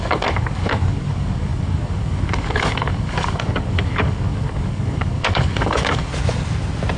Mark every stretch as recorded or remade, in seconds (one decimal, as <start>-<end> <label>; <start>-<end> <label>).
0.0-6.1 remade; 6.1-7.0 recorded

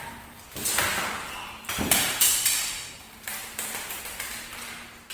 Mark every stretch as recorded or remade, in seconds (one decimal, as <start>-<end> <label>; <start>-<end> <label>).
0.0-0.9 recorded; 0.9-4.0 remade; 4.0-5.1 recorded

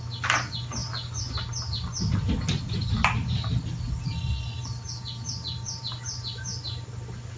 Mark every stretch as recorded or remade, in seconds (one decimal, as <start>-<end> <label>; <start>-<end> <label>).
0.0-7.4 recorded

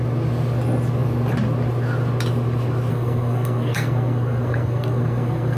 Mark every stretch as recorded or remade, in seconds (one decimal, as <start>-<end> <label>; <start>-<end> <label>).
0.0-2.9 recorded; 2.9-5.6 remade

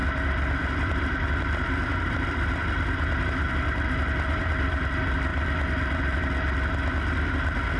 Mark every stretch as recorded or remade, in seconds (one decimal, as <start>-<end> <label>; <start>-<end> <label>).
0.0-5.3 remade; 5.3-7.8 recorded

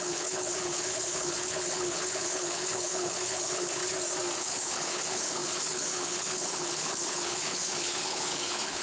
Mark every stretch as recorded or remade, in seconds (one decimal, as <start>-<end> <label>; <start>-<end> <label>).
0.0-3.8 remade; 3.8-4.4 recorded; 4.4-8.8 remade